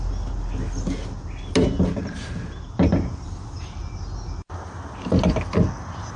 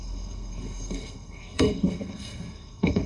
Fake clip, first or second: second